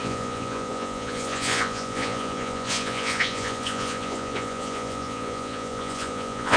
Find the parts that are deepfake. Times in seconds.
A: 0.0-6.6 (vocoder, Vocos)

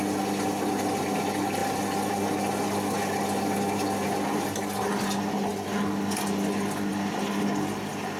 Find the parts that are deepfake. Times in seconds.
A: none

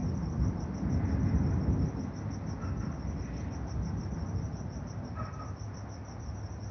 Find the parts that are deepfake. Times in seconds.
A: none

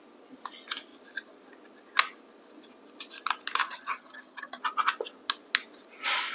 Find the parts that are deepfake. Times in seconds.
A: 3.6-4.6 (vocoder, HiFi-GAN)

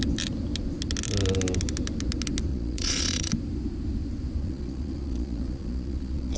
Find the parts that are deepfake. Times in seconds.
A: 2.5-3.3 (vocoder, Vocos); 4.4-6.4

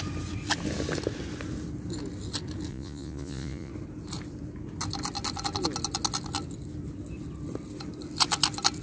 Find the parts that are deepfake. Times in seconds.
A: 2.7-3.7 (vocoder, Vocos)